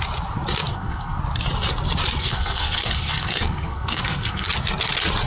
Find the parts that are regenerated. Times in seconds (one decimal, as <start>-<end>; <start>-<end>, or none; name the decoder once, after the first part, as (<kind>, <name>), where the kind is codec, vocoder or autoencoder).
0.7-1.2 (codec, SNAC); 2.2-4.5